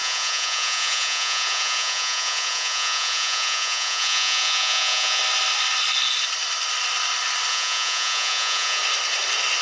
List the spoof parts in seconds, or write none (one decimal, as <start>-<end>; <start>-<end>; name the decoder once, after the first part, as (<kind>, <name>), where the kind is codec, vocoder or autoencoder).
0.0-5.2 (vocoder, Vocos); 7.5-8.8